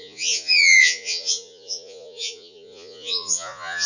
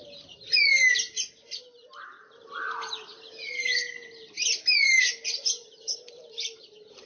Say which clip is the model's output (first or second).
first